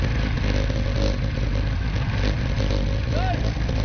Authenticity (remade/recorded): recorded